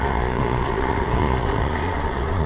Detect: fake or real fake